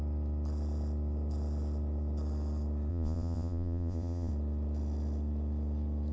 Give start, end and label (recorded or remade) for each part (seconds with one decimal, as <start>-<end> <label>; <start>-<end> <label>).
0.0-2.9 recorded; 2.9-4.3 remade; 4.3-6.1 recorded